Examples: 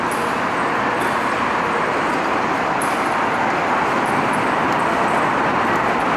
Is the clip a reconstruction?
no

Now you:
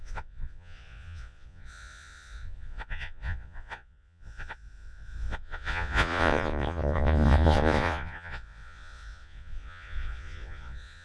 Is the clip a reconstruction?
yes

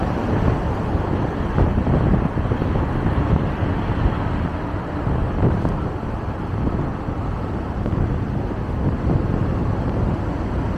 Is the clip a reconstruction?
no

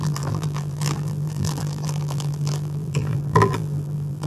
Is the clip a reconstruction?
yes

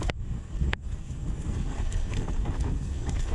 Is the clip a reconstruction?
yes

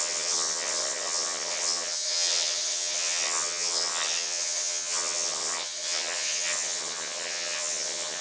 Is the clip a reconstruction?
yes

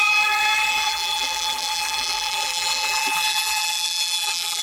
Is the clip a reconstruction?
yes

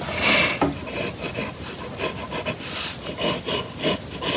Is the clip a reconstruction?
no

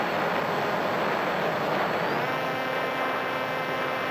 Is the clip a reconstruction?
no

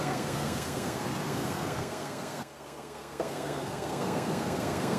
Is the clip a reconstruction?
yes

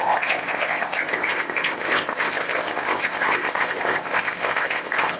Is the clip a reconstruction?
yes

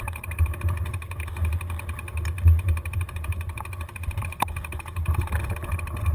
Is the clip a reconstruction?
yes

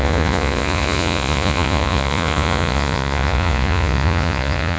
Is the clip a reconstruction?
yes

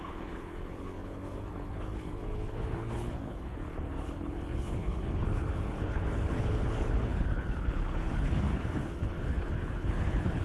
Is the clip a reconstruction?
yes